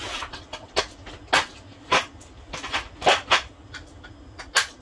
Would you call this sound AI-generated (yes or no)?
no